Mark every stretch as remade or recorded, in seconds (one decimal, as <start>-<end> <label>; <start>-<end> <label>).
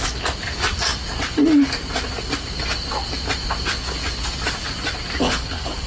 0.0-5.2 recorded; 5.2-5.9 remade